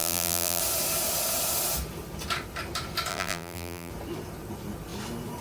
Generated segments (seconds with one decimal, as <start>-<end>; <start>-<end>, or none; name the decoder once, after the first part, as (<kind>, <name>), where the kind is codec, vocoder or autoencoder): 0.0-0.6 (vocoder, BigVGAN v2); 3.1-3.9